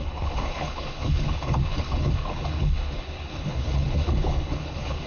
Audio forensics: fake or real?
fake